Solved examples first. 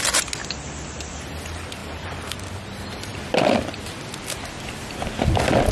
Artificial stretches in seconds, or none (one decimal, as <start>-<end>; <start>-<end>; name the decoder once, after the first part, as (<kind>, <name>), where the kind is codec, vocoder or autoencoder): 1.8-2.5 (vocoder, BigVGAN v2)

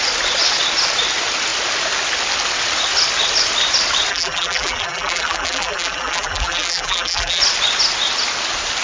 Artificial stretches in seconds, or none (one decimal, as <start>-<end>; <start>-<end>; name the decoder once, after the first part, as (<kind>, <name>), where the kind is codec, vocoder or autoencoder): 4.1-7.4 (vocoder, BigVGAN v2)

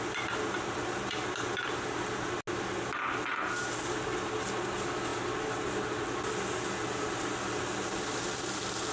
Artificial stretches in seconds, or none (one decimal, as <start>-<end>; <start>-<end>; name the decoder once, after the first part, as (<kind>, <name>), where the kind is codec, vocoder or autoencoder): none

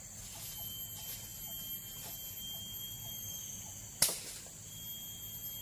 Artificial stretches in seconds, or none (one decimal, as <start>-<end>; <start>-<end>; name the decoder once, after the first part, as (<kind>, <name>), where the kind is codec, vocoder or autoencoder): none